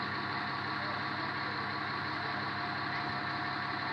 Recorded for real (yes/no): yes